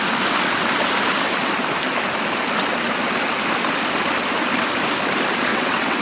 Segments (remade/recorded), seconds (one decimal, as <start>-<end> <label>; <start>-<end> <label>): 0.0-5.5 recorded; 5.5-6.0 remade